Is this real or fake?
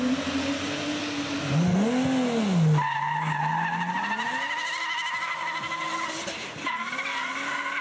real